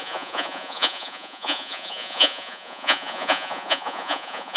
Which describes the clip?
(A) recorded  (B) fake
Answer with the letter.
B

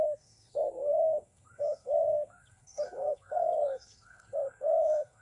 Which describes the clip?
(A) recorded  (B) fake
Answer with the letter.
B